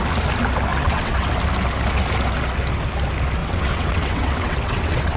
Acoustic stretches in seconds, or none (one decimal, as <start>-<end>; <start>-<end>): 0.0-0.7; 1.3-3.4